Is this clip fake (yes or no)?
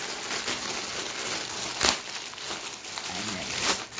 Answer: no